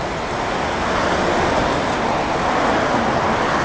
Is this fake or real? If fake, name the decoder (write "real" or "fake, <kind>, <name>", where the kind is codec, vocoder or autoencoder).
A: real